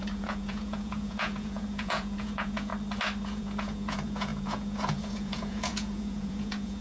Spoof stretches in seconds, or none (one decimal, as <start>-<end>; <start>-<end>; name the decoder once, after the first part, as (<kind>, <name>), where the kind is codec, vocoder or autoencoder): 0.0-2.7 (vocoder, Vocos); 3.2-6.8